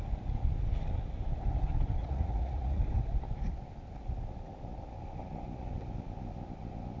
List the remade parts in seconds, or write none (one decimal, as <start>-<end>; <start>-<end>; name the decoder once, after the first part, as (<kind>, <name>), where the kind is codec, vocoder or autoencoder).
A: 2.0-2.8 (vocoder, Vocos)